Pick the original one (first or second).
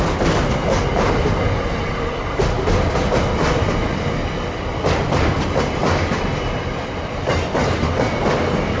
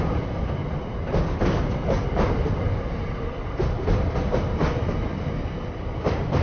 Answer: first